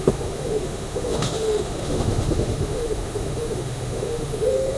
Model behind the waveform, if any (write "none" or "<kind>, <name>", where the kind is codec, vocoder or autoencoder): autoencoder, DAC-VAE